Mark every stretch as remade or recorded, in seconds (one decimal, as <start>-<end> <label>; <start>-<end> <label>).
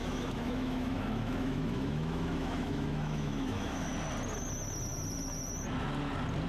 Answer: 0.0-3.9 remade; 3.9-6.5 recorded